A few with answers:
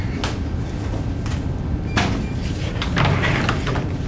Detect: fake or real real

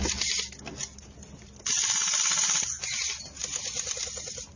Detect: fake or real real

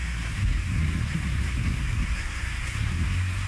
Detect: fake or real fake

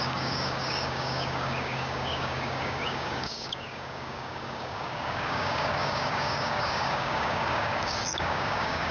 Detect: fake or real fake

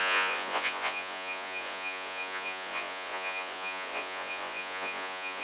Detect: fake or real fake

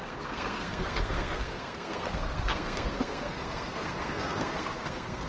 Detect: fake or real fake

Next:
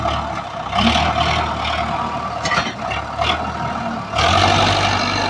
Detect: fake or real real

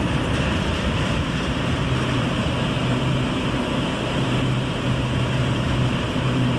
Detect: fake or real fake